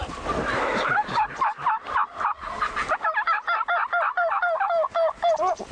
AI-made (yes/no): no